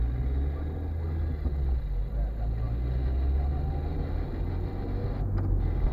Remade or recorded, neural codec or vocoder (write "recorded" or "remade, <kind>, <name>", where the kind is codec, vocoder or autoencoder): recorded